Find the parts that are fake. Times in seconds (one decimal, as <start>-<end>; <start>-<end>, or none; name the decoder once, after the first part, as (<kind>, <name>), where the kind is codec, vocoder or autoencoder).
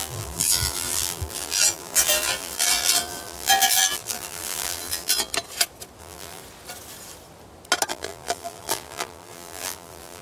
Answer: 0.0-5.3 (vocoder, BigVGAN v2); 6.0-6.4; 7.9-10.2